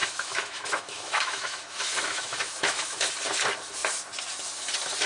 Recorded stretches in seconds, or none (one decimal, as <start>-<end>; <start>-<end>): 3.1-5.1